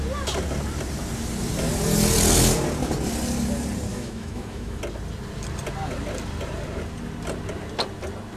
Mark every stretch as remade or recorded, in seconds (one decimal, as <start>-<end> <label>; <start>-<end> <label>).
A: 0.0-3.9 recorded; 3.9-4.8 remade; 4.8-8.4 recorded